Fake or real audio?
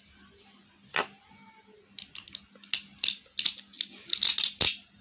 real